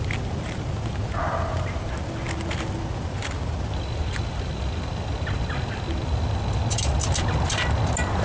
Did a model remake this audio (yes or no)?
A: no